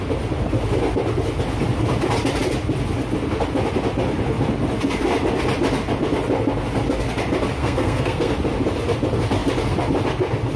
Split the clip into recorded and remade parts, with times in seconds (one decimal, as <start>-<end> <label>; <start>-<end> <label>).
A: 0.0-7.6 recorded; 7.6-8.3 remade; 8.3-10.6 recorded